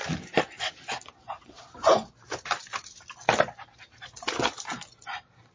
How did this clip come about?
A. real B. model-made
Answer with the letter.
A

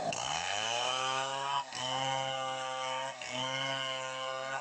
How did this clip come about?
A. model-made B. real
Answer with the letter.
A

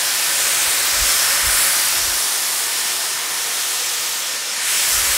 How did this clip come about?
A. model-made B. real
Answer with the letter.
B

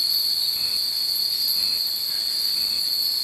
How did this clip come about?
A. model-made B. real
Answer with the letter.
B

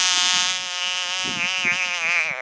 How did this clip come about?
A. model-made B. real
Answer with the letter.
B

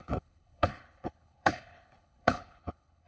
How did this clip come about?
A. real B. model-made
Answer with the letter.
B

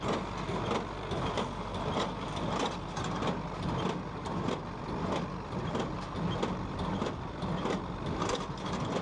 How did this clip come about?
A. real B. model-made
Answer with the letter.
A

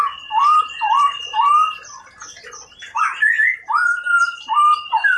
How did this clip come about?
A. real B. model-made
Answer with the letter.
A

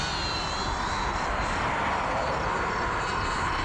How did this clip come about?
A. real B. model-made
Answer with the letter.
A